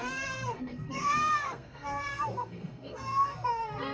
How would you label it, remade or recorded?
remade